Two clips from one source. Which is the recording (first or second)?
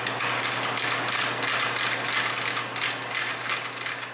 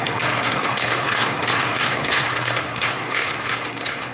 first